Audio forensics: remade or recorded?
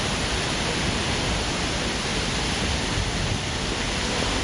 recorded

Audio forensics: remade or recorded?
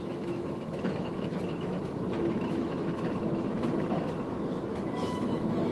remade